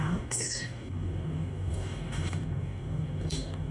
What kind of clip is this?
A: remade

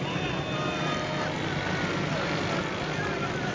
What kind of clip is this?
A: recorded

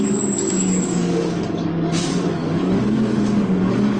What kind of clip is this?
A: remade